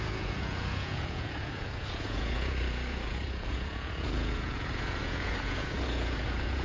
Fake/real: fake